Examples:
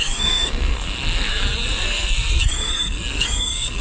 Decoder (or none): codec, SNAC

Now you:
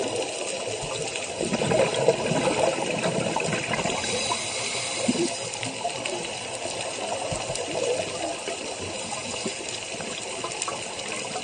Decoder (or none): none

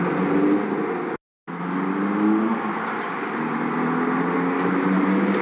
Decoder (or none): none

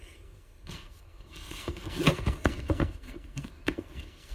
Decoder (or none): codec, SNAC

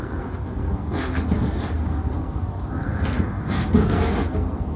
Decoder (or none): codec, SNAC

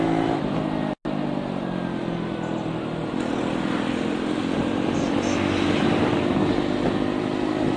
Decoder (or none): none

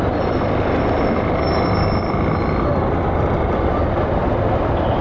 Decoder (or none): none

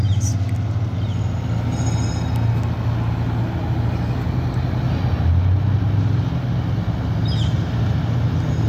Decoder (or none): none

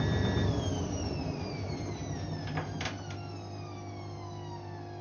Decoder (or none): none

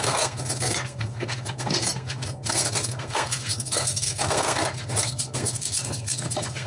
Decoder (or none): codec, SNAC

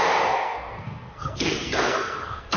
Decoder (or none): codec, SNAC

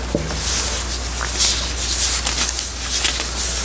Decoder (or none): none